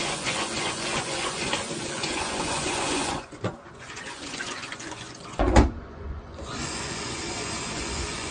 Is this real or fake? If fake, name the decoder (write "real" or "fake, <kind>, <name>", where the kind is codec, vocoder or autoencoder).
fake, vocoder, Vocos